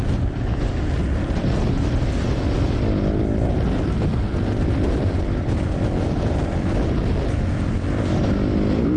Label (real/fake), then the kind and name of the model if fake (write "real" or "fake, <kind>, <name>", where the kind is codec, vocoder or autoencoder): real